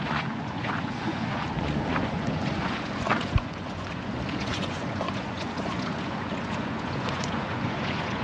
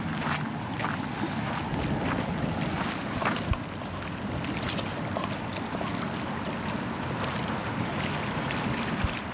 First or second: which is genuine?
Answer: second